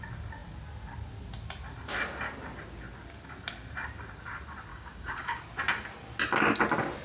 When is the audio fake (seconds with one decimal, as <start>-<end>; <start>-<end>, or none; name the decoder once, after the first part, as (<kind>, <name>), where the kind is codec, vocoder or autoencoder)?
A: 4.7-5.4 (codec, DAC)